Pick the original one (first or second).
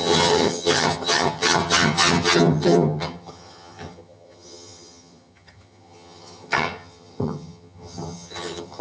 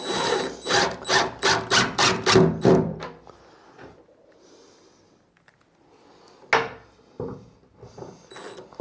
second